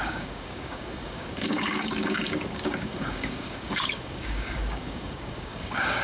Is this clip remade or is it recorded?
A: remade